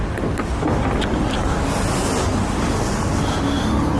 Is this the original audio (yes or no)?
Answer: yes